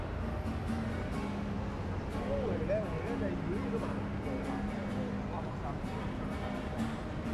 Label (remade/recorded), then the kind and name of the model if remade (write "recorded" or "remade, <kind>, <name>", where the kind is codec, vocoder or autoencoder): recorded